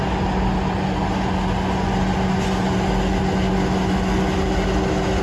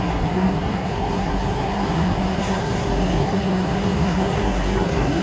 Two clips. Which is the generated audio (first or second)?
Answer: second